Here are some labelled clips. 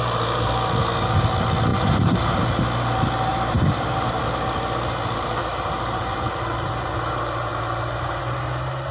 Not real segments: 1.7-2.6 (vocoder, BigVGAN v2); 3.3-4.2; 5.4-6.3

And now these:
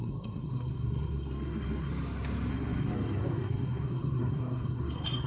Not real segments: 0.0-1.9 (codec, SNAC); 2.5-5.3

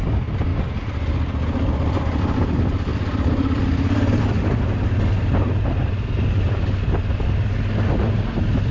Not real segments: 0.5-2.2 (vocoder, BigVGAN v2); 2.9-3.6

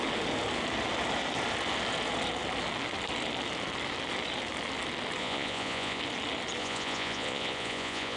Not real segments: 5.2-6.0 (vocoder, Vocos); 6.6-8.2